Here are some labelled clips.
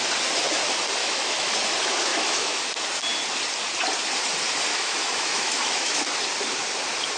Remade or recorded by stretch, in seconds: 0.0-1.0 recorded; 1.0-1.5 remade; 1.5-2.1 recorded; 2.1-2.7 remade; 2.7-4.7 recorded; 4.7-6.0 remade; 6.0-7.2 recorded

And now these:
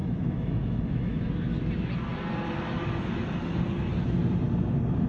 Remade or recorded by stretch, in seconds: 0.0-1.3 remade; 1.3-5.1 recorded

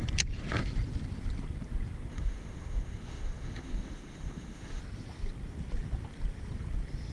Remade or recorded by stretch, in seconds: 0.0-2.1 recorded; 2.1-4.8 remade; 4.8-7.1 recorded

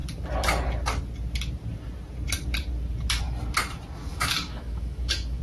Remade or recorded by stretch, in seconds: 0.0-4.1 recorded; 4.1-5.4 remade

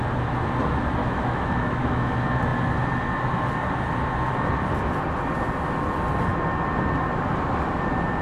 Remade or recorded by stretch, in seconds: 0.0-1.0 recorded; 1.0-2.1 remade; 2.1-8.2 recorded

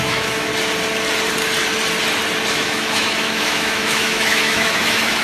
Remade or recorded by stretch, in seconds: 0.0-0.5 remade; 0.5-2.5 recorded; 2.5-5.2 remade

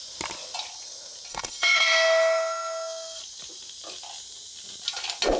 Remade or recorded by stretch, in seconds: 0.0-1.3 recorded; 1.3-3.2 remade; 3.2-5.4 recorded

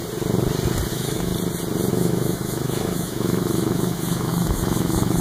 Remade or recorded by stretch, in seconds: 0.0-0.9 recorded; 0.9-1.3 remade; 1.3-1.9 recorded; 1.9-5.2 remade